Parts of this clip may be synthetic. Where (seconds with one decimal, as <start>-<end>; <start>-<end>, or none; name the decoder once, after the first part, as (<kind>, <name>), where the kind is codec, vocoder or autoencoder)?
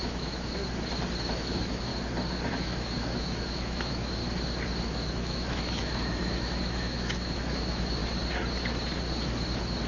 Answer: 0.0-0.6 (autoencoder, DAC-VAE); 1.3-1.9; 2.5-4.2; 4.8-8.0